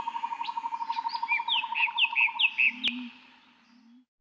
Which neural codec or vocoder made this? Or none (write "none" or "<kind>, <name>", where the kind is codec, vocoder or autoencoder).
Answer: none